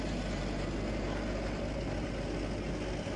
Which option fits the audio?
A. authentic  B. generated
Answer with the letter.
A